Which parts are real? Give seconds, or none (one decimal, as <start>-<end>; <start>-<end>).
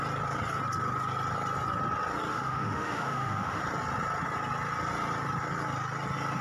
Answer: 0.0-2.3; 3.6-6.4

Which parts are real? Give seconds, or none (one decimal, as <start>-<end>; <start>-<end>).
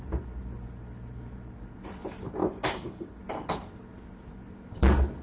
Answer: 0.0-2.4; 3.2-5.2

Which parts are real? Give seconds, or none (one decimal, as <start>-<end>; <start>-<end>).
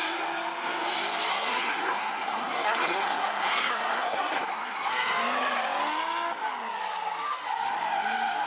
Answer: 0.0-1.3; 4.9-8.5